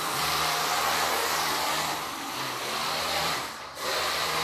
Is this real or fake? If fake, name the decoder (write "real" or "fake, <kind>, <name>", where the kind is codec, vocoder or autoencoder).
fake, vocoder, BigVGAN v2